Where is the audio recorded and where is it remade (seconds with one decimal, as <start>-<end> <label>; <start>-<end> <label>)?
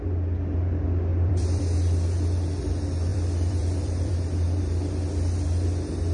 0.0-1.1 recorded; 1.1-1.6 remade; 1.6-3.1 recorded; 3.1-4.1 remade; 4.1-6.1 recorded